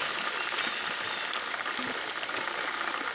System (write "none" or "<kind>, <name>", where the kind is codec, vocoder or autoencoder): none